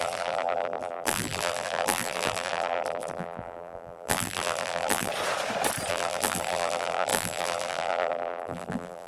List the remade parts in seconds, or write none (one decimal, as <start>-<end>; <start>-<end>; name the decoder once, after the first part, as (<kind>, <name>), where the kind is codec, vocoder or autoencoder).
0.0-5.1 (vocoder, BigVGAN v2); 5.9-9.1